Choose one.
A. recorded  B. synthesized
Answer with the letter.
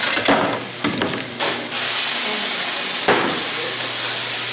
A